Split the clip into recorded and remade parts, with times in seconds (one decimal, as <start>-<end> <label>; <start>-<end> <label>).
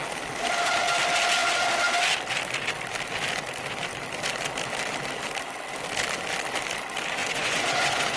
0.0-7.2 recorded; 7.2-8.2 remade